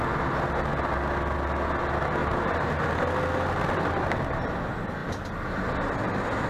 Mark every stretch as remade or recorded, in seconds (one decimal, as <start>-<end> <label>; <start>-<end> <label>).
0.0-2.2 recorded; 2.2-2.7 remade; 2.7-6.5 recorded